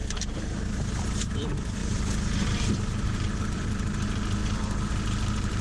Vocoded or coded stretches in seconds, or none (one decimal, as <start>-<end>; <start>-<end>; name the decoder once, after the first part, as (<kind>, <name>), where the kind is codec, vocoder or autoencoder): 1.3-1.8 (vocoder, BigVGAN v2); 2.7-4.4